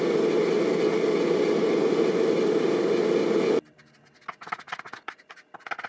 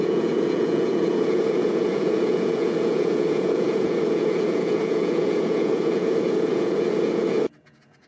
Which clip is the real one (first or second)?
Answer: first